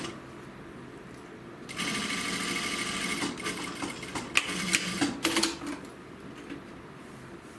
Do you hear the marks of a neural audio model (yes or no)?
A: no